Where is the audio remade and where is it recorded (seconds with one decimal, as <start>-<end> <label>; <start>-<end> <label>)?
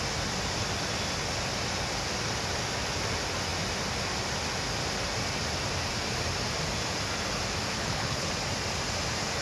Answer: 0.0-7.7 recorded; 7.7-8.3 remade; 8.3-9.4 recorded